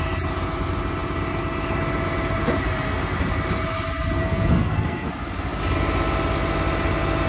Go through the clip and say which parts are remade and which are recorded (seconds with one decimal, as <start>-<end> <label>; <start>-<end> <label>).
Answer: 0.0-4.2 recorded; 4.2-5.1 remade; 5.1-7.3 recorded